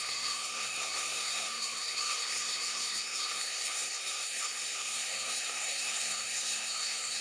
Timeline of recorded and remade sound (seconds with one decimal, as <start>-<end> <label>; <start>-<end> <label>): 0.0-7.2 remade